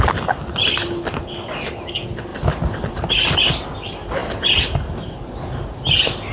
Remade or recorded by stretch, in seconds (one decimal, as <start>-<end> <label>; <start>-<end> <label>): 0.0-0.6 recorded; 0.6-1.2 remade; 1.2-2.3 recorded; 2.3-3.1 remade; 3.1-6.3 recorded